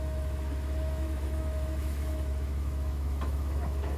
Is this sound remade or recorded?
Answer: remade